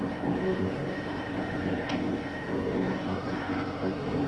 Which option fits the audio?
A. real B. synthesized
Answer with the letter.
B